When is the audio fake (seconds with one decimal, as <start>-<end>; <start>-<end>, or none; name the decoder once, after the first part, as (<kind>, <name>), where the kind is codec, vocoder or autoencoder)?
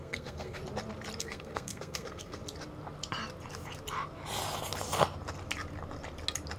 0.0-0.6 (codec, SNAC); 1.2-2.4